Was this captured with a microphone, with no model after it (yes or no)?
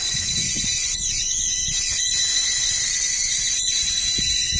no